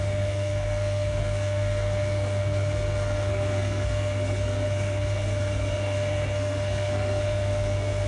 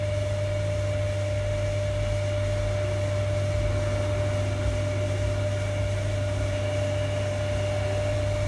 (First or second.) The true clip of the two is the second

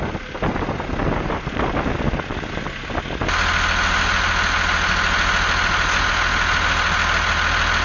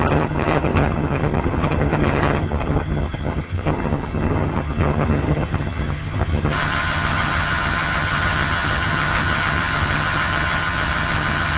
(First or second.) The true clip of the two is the first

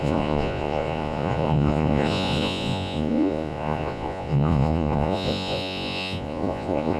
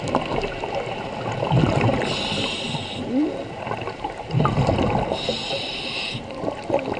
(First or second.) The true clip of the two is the second